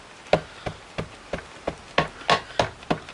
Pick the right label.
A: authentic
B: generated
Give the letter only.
A